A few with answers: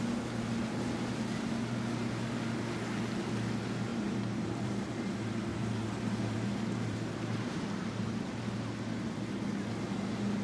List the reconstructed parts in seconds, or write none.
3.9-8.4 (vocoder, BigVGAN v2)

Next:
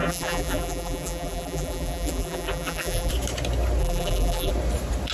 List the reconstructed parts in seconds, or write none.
0.0-3.1 (vocoder, BigVGAN v2); 3.8-4.5

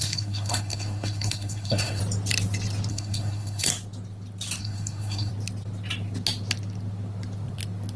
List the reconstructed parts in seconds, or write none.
0.0-2.0 (codec, SNAC); 2.9-3.7; 4.6-5.3

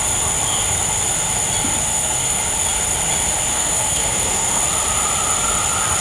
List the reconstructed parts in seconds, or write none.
1.8-2.4 (codec, SNAC); 3.5-4.6

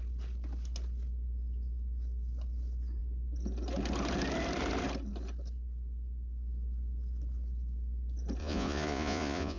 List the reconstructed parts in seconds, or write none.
8.4-9.6 (vocoder, Vocos)

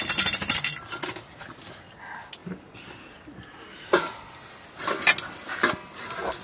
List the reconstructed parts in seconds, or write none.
none

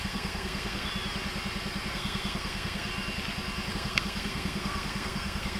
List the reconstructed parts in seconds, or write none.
0.0-0.9 (codec, SNAC); 1.9-2.9; 3.7-5.6

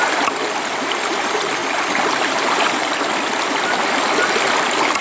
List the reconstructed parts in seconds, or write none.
none